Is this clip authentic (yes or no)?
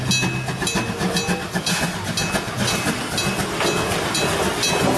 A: yes